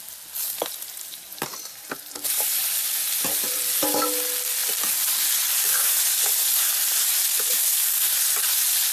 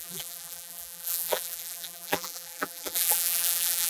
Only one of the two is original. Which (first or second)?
first